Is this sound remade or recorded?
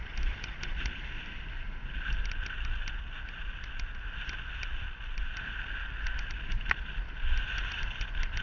remade